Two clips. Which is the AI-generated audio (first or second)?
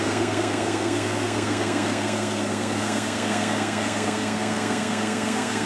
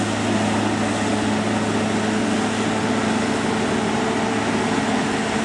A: first